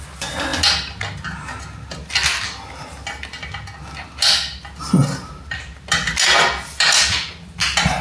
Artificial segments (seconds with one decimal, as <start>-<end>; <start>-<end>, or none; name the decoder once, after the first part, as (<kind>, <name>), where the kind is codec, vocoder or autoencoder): none